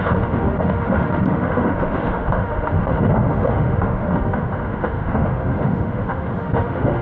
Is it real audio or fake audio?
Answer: fake